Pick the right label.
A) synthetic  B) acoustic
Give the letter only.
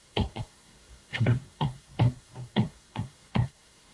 A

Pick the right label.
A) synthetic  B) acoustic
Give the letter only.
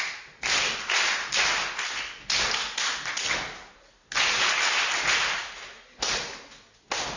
B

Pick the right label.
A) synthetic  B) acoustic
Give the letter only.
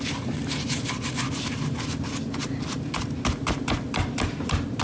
B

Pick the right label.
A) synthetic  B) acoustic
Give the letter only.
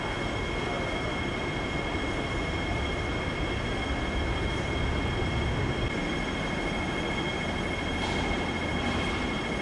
B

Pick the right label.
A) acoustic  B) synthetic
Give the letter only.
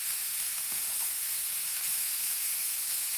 B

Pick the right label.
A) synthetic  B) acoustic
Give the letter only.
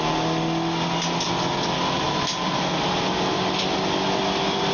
B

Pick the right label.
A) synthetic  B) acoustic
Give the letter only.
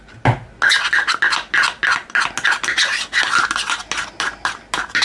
B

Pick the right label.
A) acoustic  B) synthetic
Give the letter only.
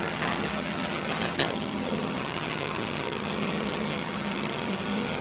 B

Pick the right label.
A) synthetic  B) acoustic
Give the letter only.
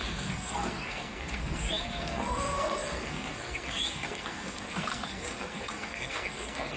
A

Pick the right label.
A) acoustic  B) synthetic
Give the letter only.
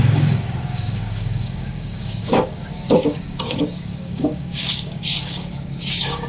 B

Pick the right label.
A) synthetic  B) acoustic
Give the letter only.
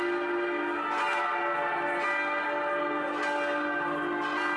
B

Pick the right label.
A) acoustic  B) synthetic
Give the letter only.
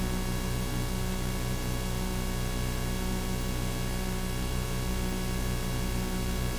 A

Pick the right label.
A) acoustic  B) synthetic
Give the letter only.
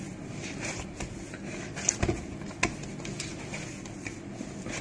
A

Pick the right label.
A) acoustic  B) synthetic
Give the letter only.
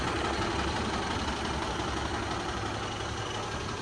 A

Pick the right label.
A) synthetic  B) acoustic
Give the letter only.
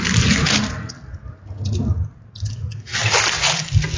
B